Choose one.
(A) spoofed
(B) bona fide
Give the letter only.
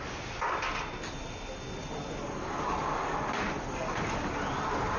B